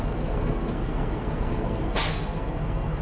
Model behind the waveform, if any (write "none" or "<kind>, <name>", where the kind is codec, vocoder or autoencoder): codec, SNAC